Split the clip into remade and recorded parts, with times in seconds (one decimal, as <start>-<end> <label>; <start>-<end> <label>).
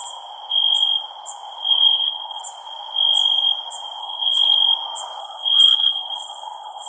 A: 0.0-1.7 recorded; 1.7-2.4 remade; 2.4-4.0 recorded; 4.0-4.4 remade; 4.4-5.2 recorded; 5.2-6.9 remade